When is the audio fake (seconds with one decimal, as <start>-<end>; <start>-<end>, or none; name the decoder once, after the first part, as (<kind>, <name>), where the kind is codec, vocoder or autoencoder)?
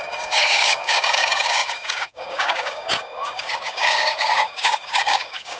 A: 0.0-5.6 (codec, DAC)